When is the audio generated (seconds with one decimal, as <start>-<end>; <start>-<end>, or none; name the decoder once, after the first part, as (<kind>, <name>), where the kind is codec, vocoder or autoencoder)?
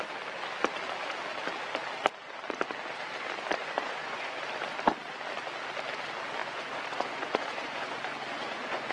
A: 3.6-4.4 (vocoder, Vocos); 6.4-8.9